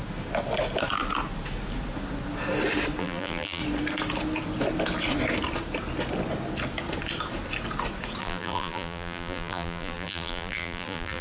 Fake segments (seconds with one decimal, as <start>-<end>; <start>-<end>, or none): 3.0-3.6; 8.2-11.2